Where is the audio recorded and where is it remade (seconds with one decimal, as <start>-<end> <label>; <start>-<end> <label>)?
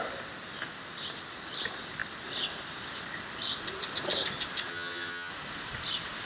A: 0.0-4.7 recorded; 4.7-5.3 remade; 5.3-6.3 recorded